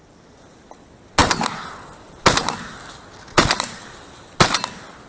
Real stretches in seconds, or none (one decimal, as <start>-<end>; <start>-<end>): 0.0-5.1